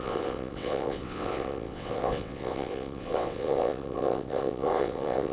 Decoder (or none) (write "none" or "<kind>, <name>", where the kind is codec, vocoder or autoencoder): vocoder, WaveNeXt